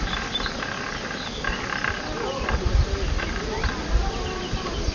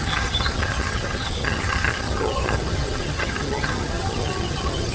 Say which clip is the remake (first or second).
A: second